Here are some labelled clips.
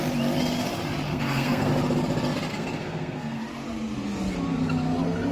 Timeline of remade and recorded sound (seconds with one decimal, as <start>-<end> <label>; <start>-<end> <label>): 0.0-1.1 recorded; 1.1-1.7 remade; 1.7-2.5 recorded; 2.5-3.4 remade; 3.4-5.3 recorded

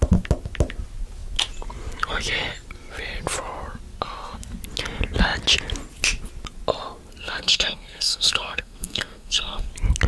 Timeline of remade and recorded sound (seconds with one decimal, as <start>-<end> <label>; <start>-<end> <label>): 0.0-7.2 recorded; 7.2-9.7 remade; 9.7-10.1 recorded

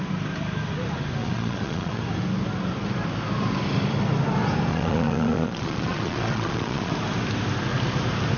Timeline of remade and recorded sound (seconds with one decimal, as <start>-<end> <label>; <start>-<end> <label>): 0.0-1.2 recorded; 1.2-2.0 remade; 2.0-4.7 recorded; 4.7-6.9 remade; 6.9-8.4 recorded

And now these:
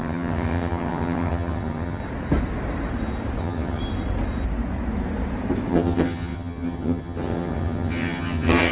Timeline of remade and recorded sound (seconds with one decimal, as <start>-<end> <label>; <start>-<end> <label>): 0.0-2.0 remade; 2.0-3.4 recorded; 3.4-3.8 remade; 3.8-5.7 recorded; 5.7-8.7 remade

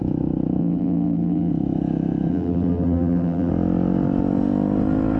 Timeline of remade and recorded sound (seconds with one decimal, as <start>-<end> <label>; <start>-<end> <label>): 0.0-0.6 recorded; 0.6-1.5 remade; 1.5-2.3 recorded; 2.3-3.5 remade; 3.5-5.2 recorded

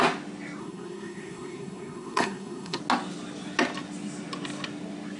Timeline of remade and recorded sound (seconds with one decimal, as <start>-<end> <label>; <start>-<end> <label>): 0.0-0.6 recorded; 0.6-2.8 remade; 2.8-5.2 recorded